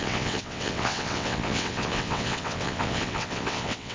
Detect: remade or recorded remade